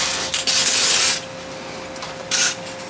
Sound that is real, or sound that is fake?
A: real